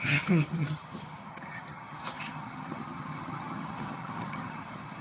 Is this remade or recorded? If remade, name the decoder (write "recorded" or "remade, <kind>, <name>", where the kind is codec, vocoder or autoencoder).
remade, vocoder, HiFi-GAN